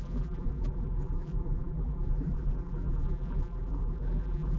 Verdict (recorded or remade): remade